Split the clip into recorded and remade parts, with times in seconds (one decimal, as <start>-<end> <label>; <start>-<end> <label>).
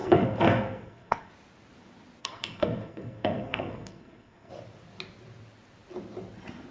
0.0-1.3 remade; 1.3-2.2 recorded; 2.2-4.5 remade; 4.5-6.7 recorded